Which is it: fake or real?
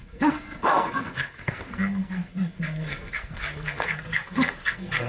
fake